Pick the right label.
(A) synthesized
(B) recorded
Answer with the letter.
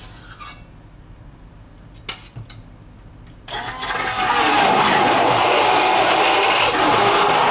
B